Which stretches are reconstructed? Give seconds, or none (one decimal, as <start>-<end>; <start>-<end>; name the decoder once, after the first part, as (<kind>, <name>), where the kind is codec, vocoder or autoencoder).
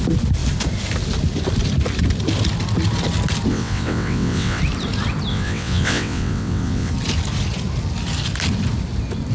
3.5-4.6 (vocoder, WaveNeXt); 5.3-6.9